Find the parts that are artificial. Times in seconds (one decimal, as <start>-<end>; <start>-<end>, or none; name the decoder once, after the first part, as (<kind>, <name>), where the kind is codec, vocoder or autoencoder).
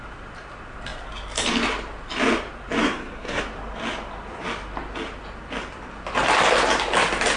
2.8-3.4 (codec, SNAC)